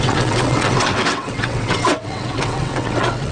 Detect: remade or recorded remade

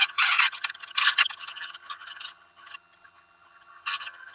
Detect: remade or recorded remade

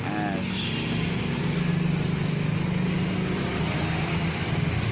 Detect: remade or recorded recorded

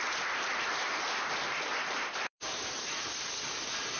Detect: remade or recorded remade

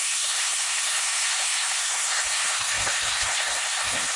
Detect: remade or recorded remade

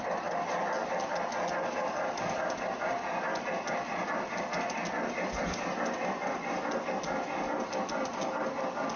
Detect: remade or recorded recorded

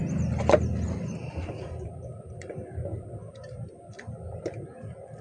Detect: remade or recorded recorded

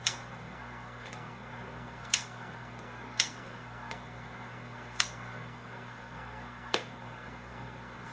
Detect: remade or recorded remade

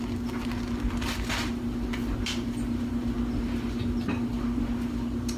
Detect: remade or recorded recorded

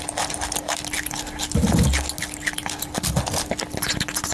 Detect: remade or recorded recorded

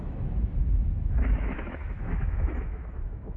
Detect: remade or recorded remade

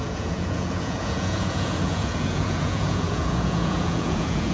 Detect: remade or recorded remade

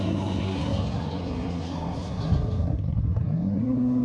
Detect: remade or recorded remade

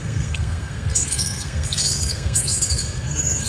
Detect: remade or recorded remade